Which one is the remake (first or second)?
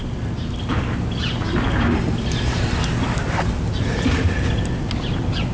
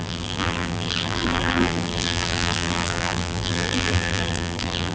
second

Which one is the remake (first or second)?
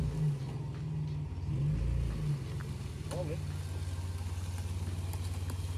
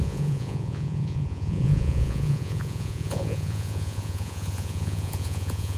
second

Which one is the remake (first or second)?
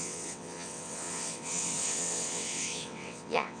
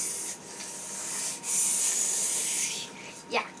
first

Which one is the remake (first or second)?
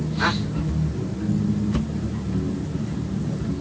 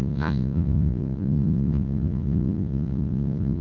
second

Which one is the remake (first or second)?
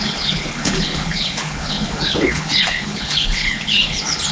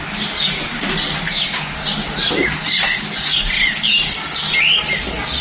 first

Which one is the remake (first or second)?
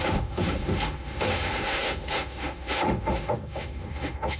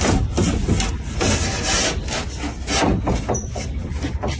first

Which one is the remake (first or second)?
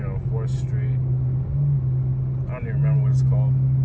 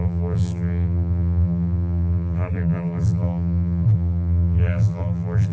second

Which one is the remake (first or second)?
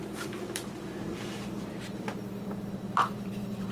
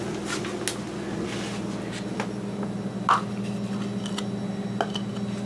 first